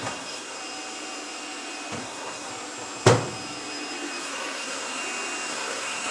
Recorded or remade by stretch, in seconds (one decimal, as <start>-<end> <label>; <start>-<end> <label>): 0.0-0.6 remade; 0.6-2.0 recorded; 2.0-2.5 remade; 2.5-4.2 recorded; 4.2-5.0 remade; 5.0-5.5 recorded; 5.5-6.1 remade